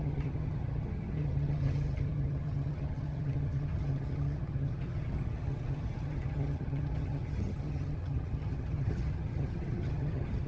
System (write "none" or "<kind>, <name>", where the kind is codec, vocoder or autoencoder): vocoder, HiFi-GAN